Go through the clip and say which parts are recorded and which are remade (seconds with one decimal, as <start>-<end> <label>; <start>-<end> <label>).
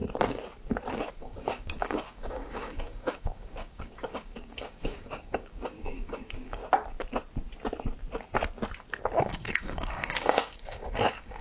0.0-1.1 recorded; 1.1-6.6 remade; 6.6-9.2 recorded; 9.2-11.4 remade